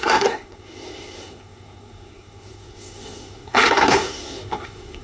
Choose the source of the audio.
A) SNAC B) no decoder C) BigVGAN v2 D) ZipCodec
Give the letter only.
A